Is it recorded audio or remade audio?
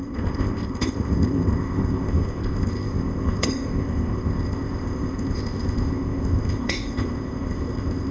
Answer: remade